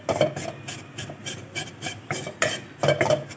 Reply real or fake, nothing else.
real